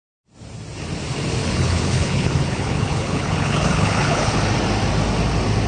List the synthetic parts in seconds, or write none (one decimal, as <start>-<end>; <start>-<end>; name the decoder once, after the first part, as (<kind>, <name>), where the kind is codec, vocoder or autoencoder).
1.4-4.4 (codec, HILCodec)